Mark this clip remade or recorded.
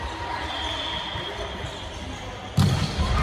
recorded